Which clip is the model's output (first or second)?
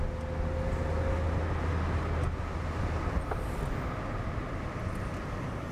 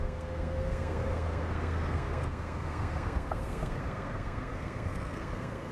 second